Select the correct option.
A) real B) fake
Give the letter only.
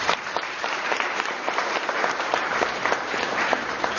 B